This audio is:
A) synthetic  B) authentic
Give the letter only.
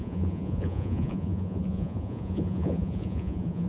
A